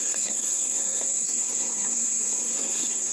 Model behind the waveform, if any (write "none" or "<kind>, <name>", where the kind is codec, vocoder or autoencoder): codec, SNAC